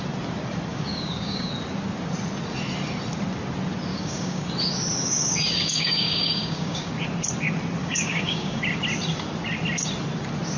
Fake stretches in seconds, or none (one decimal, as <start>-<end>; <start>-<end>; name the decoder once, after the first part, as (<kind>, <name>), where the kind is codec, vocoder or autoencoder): 0.7-1.5 (codec, DAC); 3.9-4.5; 5.0-6.9; 7.8-8.6